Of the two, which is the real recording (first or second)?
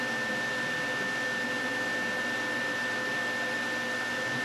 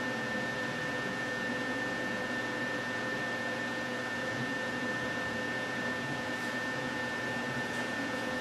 first